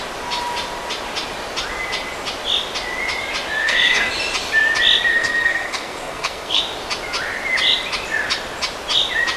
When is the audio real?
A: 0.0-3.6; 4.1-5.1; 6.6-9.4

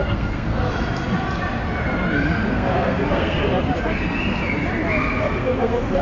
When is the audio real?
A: 0.7-2.5; 3.4-5.2

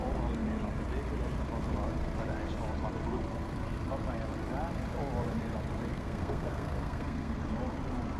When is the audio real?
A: 0.0-5.9; 7.4-8.2

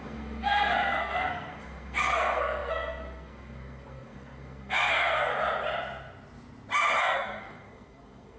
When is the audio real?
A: 5.3-7.0

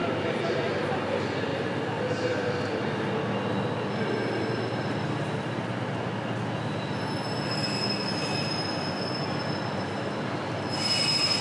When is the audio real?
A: 0.0-11.4

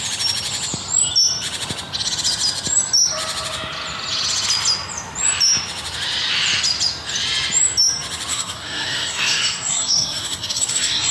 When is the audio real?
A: 0.0-8.3